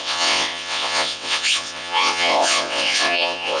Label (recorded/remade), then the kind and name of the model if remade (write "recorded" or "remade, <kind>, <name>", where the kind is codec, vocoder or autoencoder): remade, vocoder, WaveNeXt